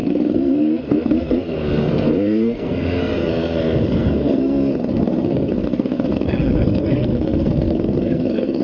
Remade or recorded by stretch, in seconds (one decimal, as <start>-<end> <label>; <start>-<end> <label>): 0.0-8.6 remade